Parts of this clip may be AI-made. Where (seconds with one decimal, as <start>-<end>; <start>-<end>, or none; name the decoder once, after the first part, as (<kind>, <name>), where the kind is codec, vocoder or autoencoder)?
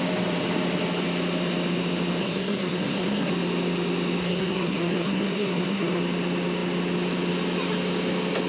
2.2-3.3 (codec, SNAC); 4.2-6.0